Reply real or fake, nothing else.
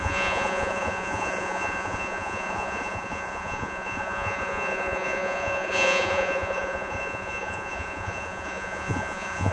fake